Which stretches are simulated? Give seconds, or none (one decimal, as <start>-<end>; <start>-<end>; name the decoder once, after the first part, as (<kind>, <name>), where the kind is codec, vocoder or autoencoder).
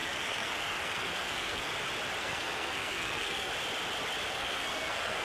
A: 0.0-1.7 (codec, SNAC); 2.2-3.5; 4.3-5.2